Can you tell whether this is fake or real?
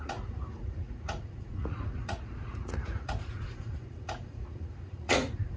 fake